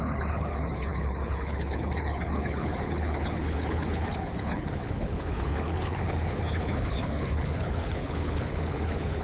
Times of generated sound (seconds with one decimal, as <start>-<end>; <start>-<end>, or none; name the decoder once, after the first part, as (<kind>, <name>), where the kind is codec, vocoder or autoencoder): 0.0-9.2 (codec, HILCodec)